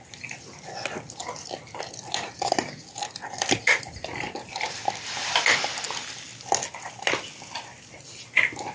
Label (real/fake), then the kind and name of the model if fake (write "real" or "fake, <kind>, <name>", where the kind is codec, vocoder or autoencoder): real